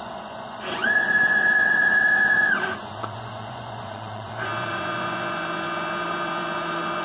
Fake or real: fake